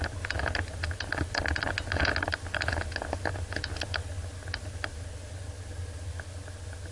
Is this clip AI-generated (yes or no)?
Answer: no